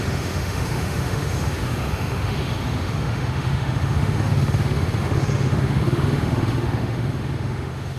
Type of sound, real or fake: fake